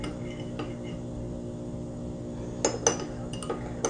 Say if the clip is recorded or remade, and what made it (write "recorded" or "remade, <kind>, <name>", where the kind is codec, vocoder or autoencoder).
recorded